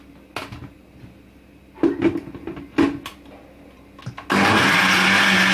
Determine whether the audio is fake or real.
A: real